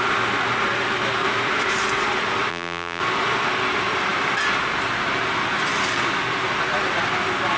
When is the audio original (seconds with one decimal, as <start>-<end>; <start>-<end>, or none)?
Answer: 0.0-2.5; 3.0-7.6

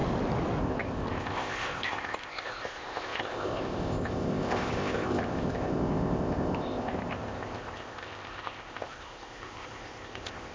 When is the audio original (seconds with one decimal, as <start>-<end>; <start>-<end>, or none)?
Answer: 0.0-0.6

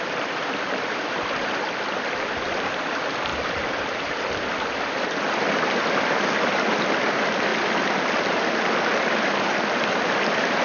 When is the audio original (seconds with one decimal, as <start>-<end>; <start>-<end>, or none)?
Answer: 7.5-9.0